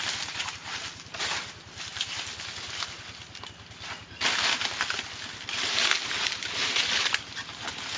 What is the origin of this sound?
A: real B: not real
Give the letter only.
A